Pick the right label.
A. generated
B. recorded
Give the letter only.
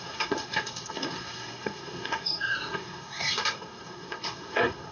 A